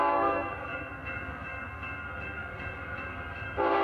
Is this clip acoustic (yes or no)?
no